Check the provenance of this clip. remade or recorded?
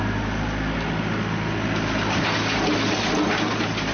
recorded